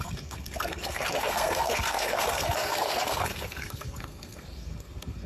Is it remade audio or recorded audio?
remade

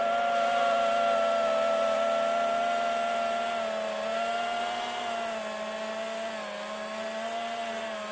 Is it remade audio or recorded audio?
recorded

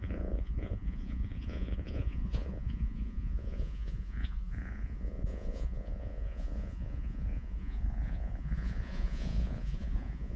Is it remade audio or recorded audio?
remade